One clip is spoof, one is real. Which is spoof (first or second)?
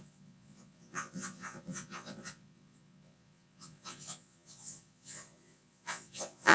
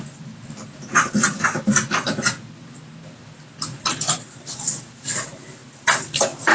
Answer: first